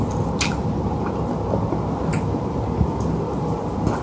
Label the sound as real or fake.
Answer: real